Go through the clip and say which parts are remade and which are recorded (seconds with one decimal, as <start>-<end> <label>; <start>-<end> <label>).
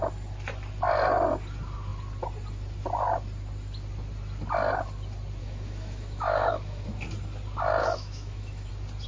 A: 0.0-5.4 recorded; 5.4-6.9 remade; 6.9-7.8 recorded; 7.8-8.7 remade; 8.7-9.1 recorded